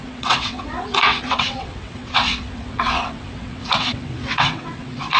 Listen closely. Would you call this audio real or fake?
fake